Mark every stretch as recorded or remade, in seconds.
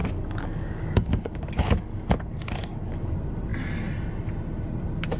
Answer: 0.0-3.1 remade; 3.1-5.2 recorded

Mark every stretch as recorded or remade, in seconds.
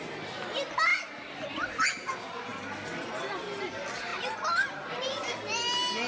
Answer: 0.0-6.1 recorded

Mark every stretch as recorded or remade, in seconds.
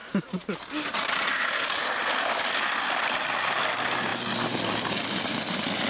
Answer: 0.0-5.9 recorded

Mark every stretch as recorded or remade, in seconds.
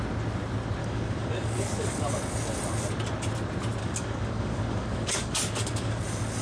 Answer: 0.0-0.8 recorded; 0.8-2.1 remade; 2.1-3.8 recorded; 3.8-6.0 remade; 6.0-6.4 recorded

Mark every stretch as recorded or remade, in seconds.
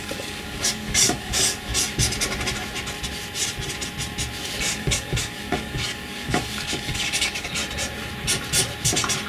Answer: 0.0-1.7 remade; 1.7-4.6 recorded; 4.6-7.6 remade; 7.6-9.3 recorded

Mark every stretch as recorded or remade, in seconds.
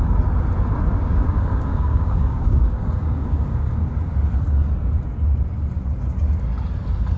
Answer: 0.0-0.9 recorded; 0.9-3.9 remade; 3.9-7.2 recorded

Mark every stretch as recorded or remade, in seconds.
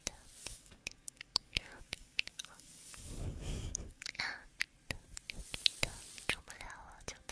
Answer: 0.0-0.4 recorded; 0.4-4.2 remade; 4.2-7.3 recorded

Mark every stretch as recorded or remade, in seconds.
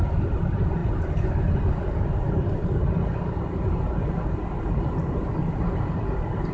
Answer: 0.0-6.5 recorded